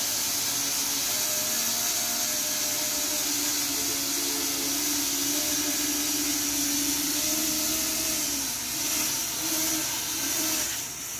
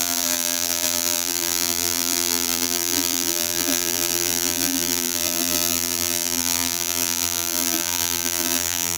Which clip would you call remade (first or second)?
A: second